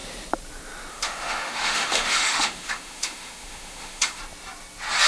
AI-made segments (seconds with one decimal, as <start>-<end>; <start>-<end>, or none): 0.9-4.2